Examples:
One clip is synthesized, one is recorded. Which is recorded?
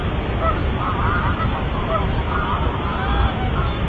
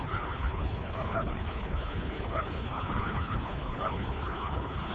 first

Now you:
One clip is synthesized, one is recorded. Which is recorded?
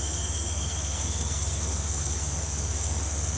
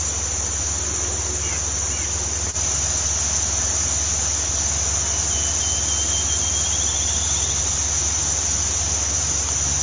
second